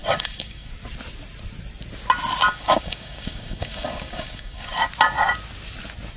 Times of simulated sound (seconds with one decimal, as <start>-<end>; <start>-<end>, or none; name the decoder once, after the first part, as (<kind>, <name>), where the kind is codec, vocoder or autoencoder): 0.0-0.7 (codec, DAC); 2.4-4.8